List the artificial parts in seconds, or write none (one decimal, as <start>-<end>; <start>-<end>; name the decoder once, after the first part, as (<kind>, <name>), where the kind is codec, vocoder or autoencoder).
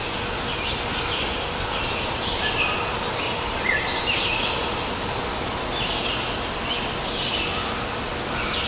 none